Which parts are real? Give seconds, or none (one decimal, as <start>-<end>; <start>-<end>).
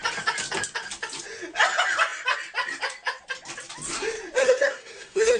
0.0-4.4